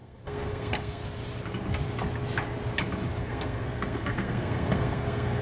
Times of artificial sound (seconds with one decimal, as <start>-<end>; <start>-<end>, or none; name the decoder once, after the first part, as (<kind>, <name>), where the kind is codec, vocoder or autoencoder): 0.0-1.0 (codec, SNAC); 3.2-5.4